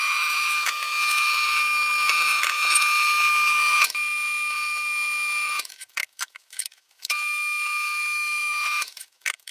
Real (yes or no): no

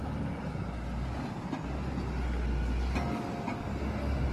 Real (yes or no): yes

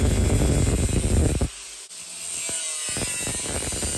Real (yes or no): yes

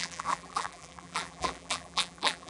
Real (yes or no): no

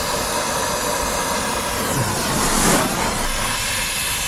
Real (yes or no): yes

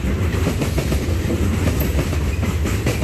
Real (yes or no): no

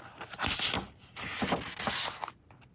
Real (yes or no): yes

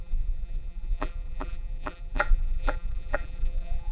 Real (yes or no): no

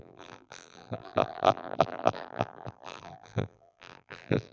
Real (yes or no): no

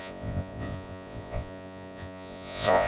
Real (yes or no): no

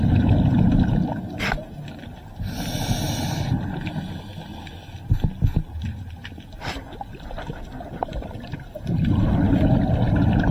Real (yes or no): yes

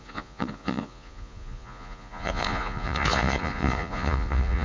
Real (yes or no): no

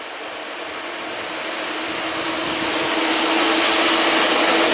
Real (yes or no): yes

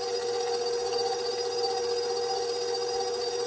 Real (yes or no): yes